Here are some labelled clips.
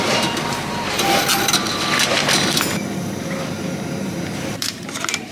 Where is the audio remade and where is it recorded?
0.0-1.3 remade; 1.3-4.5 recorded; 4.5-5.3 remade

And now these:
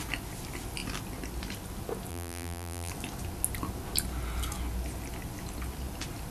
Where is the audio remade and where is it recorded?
0.0-2.1 recorded; 2.1-2.9 remade; 2.9-6.3 recorded

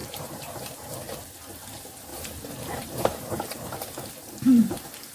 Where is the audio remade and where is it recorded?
0.0-1.0 remade; 1.0-1.5 recorded; 1.5-5.1 remade

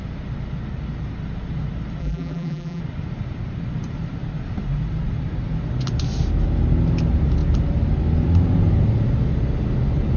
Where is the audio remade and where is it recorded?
0.0-2.0 recorded; 2.0-2.8 remade; 2.8-10.2 recorded

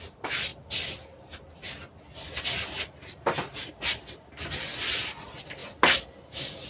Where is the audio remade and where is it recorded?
0.0-6.7 recorded

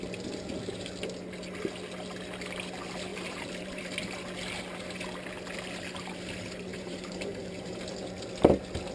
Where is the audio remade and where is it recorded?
0.0-3.1 recorded; 3.1-3.8 remade; 3.8-6.7 recorded; 6.7-7.7 remade; 7.7-8.9 recorded

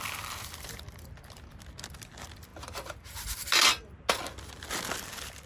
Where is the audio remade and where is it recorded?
0.0-5.5 recorded

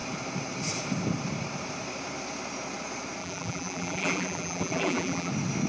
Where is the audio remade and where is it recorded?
0.0-3.2 recorded; 3.2-5.3 remade; 5.3-5.7 recorded